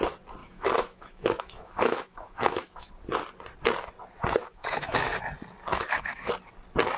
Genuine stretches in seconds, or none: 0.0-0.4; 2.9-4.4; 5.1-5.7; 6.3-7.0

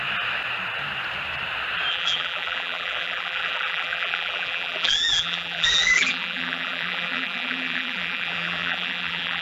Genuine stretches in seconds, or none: 0.0-1.9

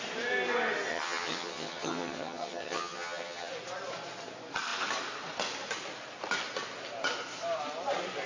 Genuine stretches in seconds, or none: 0.0-0.9; 3.5-8.3

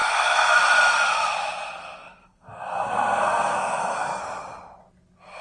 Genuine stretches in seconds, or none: 0.6-1.8; 4.2-5.4